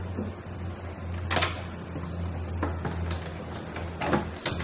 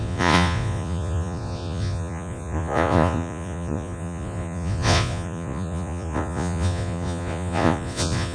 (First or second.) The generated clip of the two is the second